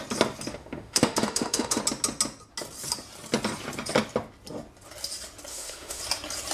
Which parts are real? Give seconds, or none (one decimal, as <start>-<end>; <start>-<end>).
0.0-0.5; 1.8-5.5; 6.0-6.5

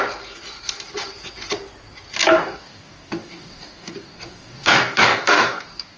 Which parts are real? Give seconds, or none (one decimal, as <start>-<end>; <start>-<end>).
0.0-2.3

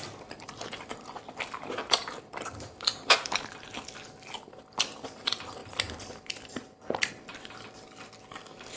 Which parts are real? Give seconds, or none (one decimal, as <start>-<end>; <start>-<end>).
5.6-7.1

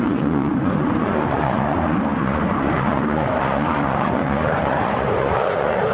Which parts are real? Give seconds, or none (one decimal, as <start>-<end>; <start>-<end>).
none

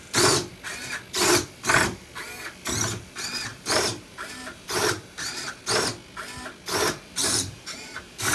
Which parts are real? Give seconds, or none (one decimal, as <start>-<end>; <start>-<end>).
0.0-3.5; 5.6-7.2